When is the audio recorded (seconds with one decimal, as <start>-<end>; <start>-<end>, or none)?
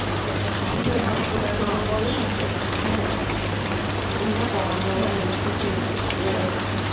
0.0-0.7; 1.4-6.9